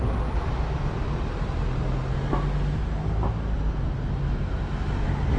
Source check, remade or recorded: recorded